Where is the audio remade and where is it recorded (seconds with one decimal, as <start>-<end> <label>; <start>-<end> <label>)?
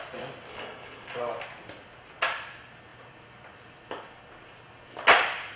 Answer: 0.0-0.5 recorded; 0.5-1.1 remade; 1.1-5.6 recorded